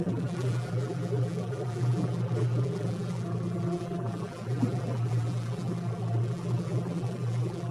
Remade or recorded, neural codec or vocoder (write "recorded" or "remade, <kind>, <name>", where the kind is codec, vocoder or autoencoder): remade, vocoder, BigVGAN v2